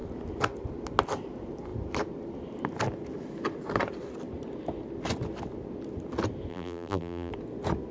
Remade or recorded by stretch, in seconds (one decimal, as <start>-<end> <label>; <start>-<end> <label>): 0.0-6.5 recorded; 6.5-7.3 remade; 7.3-7.9 recorded